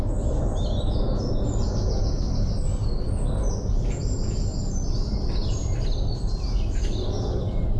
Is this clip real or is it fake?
real